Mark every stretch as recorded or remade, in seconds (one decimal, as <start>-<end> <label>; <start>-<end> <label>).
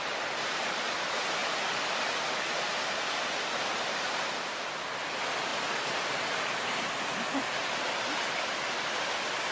0.0-9.5 recorded